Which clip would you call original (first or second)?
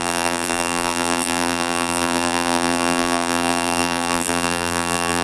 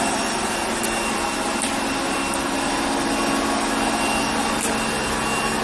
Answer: second